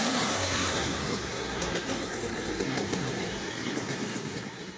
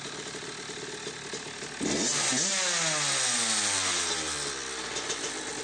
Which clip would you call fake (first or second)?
first